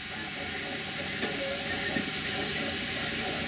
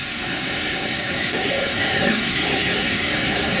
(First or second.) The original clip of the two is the first